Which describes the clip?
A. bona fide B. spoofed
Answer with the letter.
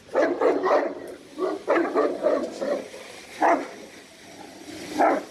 A